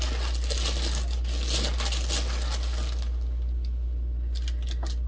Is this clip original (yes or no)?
yes